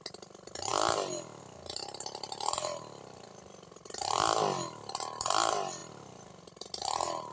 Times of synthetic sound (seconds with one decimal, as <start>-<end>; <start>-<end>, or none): none